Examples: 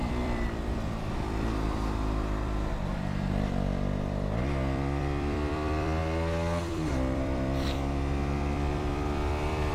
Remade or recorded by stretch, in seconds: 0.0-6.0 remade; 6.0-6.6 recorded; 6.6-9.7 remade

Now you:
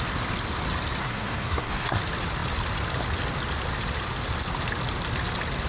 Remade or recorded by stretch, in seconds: 0.0-1.0 recorded; 1.0-2.0 remade; 2.0-5.7 recorded